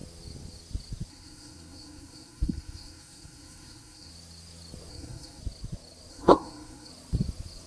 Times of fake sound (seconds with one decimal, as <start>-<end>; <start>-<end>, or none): 1.1-4.1; 4.9-5.4; 6.1-6.9